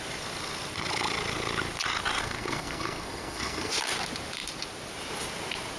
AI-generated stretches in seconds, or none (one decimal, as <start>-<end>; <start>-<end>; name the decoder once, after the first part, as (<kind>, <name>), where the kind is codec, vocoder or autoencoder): 2.2-3.7 (codec, SNAC)